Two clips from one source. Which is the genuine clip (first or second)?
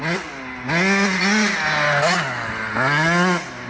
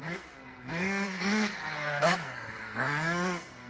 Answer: first